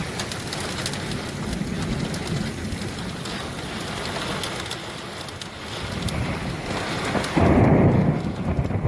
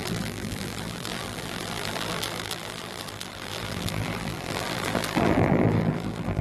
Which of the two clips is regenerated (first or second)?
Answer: second